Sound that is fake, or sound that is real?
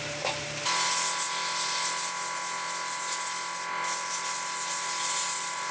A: real